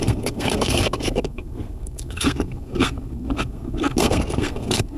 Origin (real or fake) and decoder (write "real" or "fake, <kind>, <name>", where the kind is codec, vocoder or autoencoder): fake, codec, SNAC